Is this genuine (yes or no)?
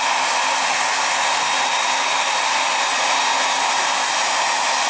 yes